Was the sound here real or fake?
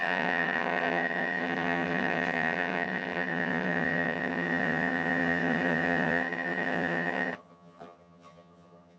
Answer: fake